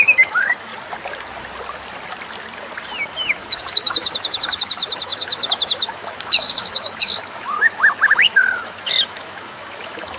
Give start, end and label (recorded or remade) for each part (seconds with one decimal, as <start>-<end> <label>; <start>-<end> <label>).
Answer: 0.0-0.7 remade; 0.7-3.0 recorded; 3.0-10.2 remade